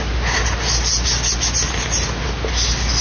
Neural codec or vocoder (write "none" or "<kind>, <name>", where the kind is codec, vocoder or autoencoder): none